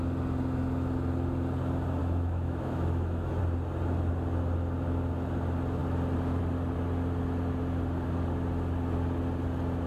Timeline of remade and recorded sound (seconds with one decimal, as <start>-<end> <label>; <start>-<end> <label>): 0.0-2.0 recorded; 2.0-3.4 remade; 3.4-9.9 recorded